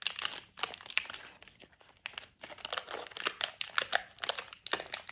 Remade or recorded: recorded